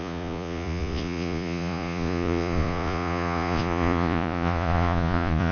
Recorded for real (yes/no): no